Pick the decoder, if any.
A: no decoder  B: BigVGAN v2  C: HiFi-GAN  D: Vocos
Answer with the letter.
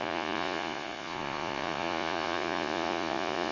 D